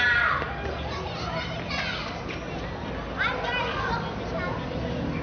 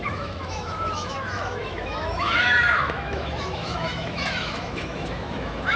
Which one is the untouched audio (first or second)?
first